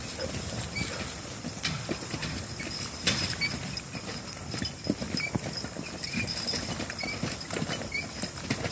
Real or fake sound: real